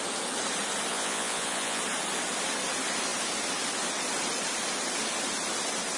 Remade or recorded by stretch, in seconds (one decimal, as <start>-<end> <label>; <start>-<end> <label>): 0.0-0.9 recorded; 0.9-1.8 remade; 1.8-6.0 recorded